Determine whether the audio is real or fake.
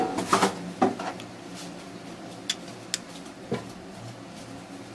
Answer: real